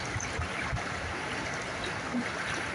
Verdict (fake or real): real